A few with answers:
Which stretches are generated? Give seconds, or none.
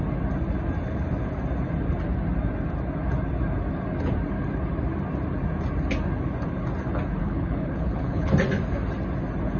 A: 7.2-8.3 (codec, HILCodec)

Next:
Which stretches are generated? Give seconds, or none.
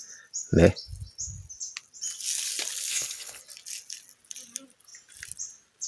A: 2.9-3.4 (codec, HILCodec)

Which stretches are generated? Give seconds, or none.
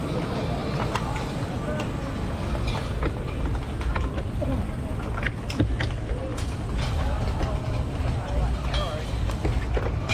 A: none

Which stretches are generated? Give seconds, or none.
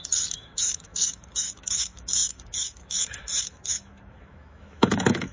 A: 0.0-5.3 (autoencoder, DAC-VAE)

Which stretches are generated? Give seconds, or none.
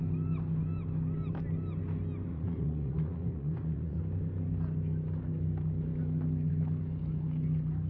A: 2.3-4.0 (vocoder, Vocos)